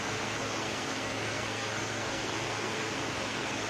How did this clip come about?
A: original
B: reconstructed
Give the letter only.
B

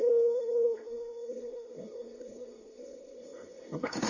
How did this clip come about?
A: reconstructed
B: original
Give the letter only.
A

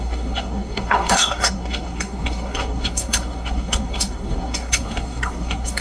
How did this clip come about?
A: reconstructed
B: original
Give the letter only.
A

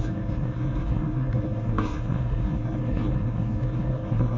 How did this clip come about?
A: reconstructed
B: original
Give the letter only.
A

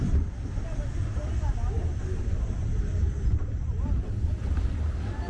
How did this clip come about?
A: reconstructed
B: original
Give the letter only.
B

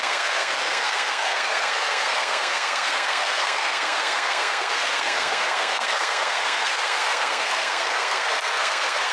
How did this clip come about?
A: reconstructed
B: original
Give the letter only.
A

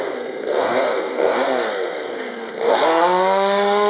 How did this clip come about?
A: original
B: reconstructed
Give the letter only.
B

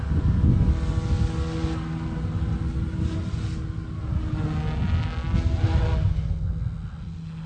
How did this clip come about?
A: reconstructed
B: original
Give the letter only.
B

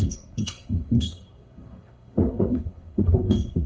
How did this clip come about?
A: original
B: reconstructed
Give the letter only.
B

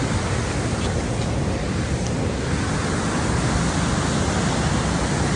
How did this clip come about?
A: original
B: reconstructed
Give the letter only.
A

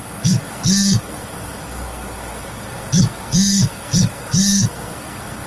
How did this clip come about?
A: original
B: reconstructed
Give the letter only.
B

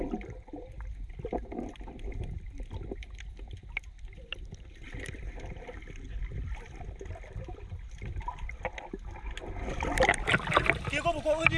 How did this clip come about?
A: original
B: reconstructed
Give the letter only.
A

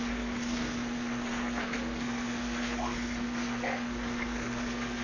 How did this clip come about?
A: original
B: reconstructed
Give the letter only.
B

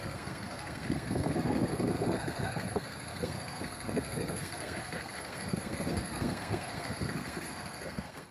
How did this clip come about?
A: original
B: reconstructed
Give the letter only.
B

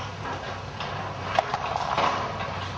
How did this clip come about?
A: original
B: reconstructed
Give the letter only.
A